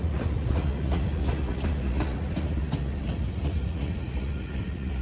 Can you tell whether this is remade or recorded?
remade